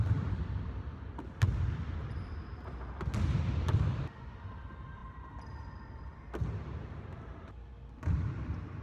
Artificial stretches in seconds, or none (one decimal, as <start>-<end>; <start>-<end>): none

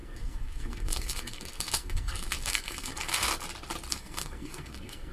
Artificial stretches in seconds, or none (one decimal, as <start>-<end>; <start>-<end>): 0.0-3.3; 3.9-5.1

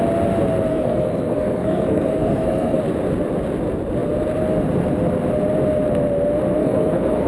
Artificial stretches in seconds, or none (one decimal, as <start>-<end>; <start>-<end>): 0.7-2.8; 6.6-7.3

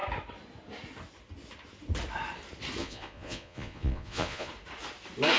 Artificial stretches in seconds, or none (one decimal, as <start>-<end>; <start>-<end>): 2.8-4.5

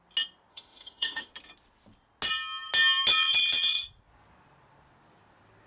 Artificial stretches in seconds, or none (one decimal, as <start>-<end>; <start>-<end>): 0.5-1.3